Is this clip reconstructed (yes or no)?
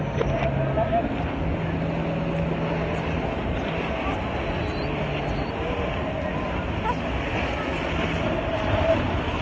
no